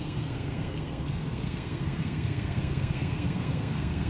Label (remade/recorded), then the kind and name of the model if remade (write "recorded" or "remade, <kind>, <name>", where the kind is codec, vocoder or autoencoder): remade, codec, SNAC